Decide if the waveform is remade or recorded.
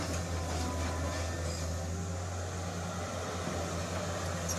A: recorded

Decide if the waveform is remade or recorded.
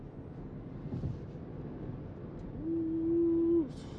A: recorded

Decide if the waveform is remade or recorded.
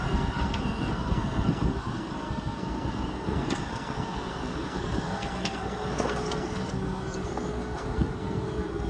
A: remade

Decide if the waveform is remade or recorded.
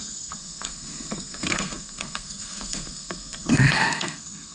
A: remade